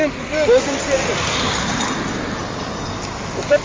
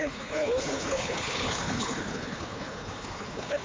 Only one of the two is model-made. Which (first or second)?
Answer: second